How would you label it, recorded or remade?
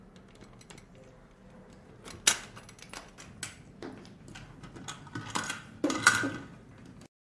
recorded